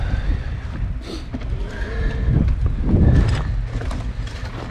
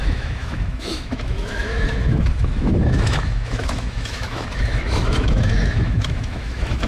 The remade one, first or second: second